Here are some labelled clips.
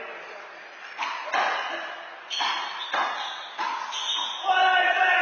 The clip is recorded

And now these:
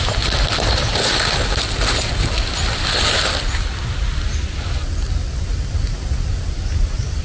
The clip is recorded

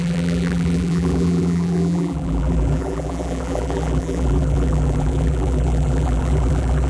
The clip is remade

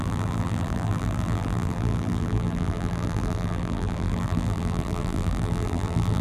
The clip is remade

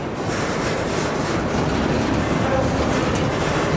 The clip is recorded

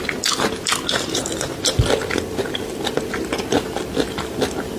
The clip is recorded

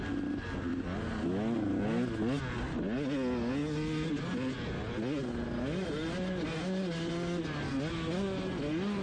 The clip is recorded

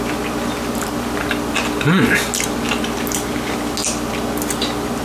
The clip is recorded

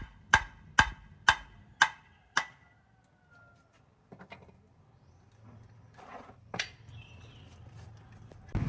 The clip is recorded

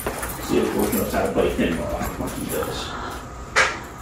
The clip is recorded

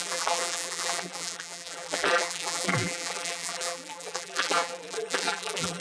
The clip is remade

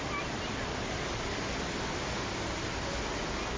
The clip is recorded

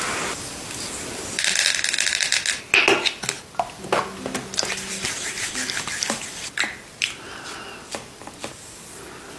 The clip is recorded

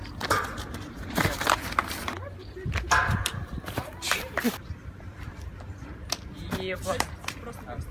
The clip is remade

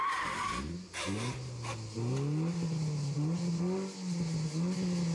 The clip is recorded